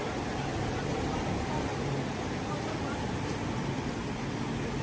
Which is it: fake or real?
real